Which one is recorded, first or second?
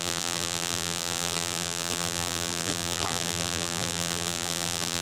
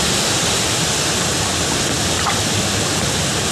second